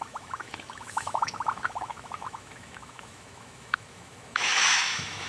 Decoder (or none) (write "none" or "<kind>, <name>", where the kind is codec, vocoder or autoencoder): autoencoder, DAC-VAE